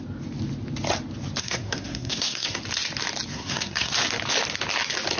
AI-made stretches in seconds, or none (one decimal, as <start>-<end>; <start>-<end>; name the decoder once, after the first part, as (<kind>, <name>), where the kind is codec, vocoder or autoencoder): 1.4-2.6 (codec, SNAC); 3.3-3.9